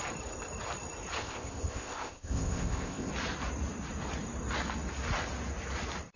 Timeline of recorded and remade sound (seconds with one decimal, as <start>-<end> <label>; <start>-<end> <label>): 0.0-1.2 recorded; 1.2-3.1 remade; 3.1-6.2 recorded